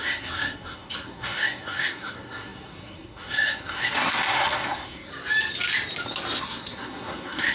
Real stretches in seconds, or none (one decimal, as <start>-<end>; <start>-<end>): 5.1-6.4